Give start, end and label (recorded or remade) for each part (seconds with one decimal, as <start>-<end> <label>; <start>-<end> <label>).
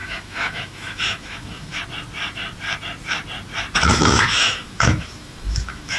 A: 0.0-1.8 remade; 1.8-3.9 recorded; 3.9-6.0 remade